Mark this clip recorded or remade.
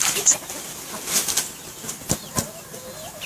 recorded